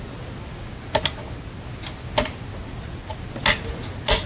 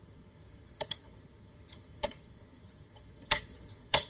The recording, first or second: first